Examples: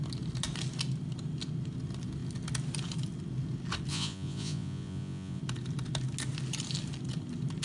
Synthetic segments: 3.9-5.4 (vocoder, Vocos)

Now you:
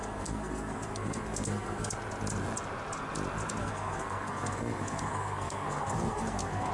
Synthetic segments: 0.0-1.9 (codec, SNAC); 3.6-6.7

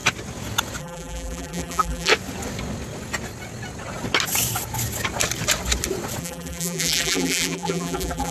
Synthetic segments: 0.8-2.1 (vocoder, BigVGAN v2); 6.2-8.3

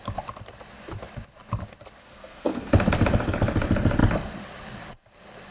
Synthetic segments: 2.0-2.7 (codec, SNAC)

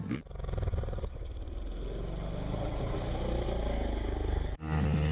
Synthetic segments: 0.7-1.6 (vocoder, Vocos)